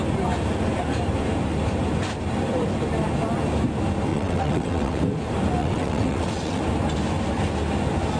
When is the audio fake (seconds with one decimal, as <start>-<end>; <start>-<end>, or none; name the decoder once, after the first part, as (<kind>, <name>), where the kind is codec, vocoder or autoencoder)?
4.1-5.0 (vocoder, WaveNeXt); 5.6-6.6